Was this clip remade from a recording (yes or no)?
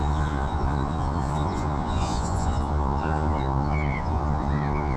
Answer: yes